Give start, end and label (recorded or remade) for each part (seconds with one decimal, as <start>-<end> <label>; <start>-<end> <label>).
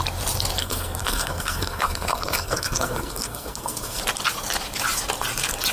0.0-0.6 recorded; 0.6-4.0 remade; 4.0-5.7 recorded